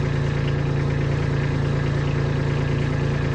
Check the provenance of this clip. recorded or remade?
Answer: recorded